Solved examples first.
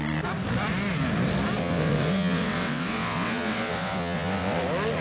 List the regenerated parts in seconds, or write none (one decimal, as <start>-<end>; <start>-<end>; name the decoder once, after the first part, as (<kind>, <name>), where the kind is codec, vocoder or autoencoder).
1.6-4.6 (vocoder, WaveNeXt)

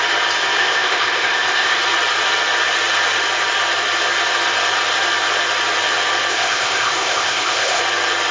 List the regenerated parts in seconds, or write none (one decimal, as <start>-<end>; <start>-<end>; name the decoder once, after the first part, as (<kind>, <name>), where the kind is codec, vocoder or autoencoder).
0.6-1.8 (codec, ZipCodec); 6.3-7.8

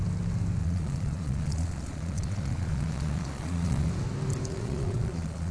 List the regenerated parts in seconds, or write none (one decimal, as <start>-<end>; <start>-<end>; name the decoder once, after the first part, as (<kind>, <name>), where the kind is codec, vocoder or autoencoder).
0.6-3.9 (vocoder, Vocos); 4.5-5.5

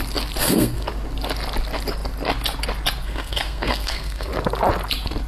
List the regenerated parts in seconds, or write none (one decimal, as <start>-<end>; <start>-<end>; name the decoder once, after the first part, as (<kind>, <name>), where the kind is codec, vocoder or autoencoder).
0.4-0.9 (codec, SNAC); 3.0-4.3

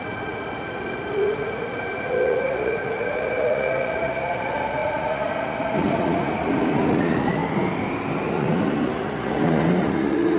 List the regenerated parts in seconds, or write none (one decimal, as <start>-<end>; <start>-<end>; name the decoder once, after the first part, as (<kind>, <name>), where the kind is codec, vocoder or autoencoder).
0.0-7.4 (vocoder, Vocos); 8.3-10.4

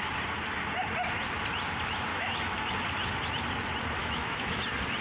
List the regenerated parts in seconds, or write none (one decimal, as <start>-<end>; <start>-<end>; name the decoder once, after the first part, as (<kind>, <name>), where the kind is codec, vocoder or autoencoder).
2.1-2.7 (autoencoder, DAC-VAE); 4.0-4.6